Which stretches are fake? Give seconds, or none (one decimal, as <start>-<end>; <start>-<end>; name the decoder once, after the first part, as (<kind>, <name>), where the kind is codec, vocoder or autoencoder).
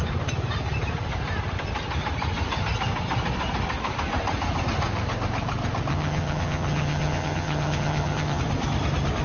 5.9-8.4 (vocoder, HiFi-GAN)